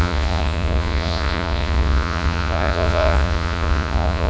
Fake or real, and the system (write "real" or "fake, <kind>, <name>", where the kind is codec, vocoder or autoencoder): fake, vocoder, Vocos